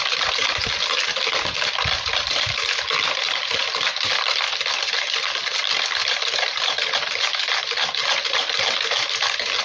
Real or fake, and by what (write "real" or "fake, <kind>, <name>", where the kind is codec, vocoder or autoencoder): real